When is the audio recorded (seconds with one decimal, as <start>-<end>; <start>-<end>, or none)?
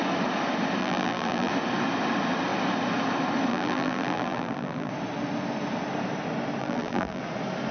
0.0-0.8; 1.5-3.5; 4.9-6.6; 7.2-7.7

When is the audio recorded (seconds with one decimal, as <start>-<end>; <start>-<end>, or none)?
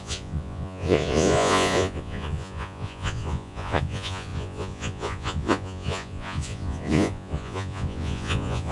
none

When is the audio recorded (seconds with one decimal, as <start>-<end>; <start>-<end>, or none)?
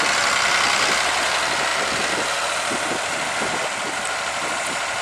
0.0-5.0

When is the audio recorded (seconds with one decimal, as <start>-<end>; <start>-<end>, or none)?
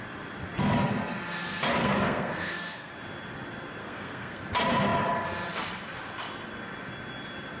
0.0-1.8; 2.9-3.8; 4.4-7.6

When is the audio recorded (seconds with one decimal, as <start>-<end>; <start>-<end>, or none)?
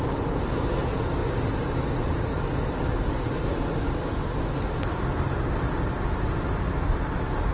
0.0-7.5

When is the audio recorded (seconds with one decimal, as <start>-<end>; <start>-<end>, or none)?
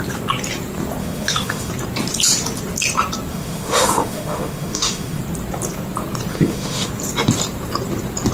0.0-1.0; 1.7-3.3; 5.2-6.3; 6.9-8.3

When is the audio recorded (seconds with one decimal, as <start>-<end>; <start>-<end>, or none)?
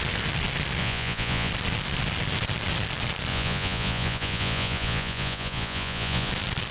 0.0-0.8; 1.5-3.3; 6.3-6.7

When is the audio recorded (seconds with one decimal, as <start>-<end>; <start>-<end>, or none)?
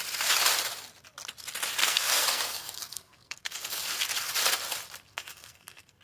0.0-1.8; 3.8-5.1